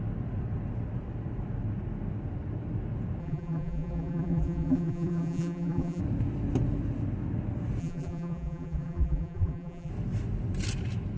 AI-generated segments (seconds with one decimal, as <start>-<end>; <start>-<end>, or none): 3.2-6.0; 7.8-9.9

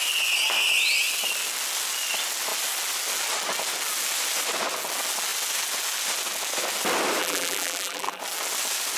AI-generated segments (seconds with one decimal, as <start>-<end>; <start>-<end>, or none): 7.2-8.2

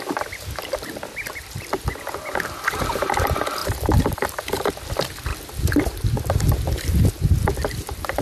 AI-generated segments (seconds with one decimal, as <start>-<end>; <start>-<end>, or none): 3.6-4.7